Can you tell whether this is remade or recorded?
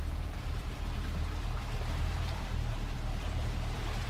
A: remade